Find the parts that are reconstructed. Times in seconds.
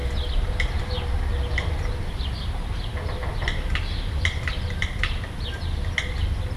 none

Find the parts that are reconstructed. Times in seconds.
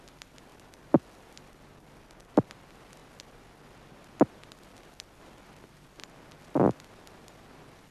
none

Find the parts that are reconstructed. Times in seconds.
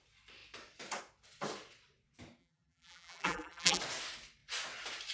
2.4-3.8 (vocoder, BigVGAN v2)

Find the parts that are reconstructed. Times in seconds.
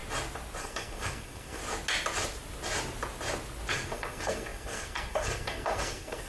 0.6-1.6 (codec, SNAC); 3.7-6.3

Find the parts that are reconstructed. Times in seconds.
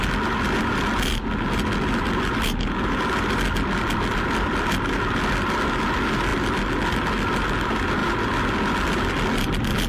none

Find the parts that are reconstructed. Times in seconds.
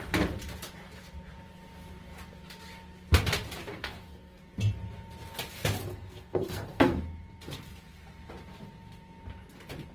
3.7-4.4 (codec, SNAC); 5.8-7.0